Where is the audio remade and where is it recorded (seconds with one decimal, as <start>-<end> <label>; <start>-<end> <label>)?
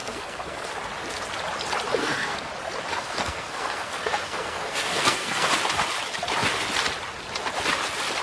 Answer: 0.0-0.7 remade; 0.7-2.0 recorded; 2.0-2.5 remade; 2.5-2.9 recorded; 2.9-5.5 remade; 5.5-8.2 recorded